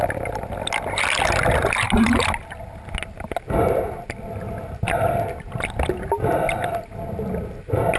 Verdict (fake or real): real